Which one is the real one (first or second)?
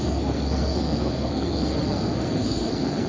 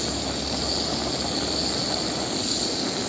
second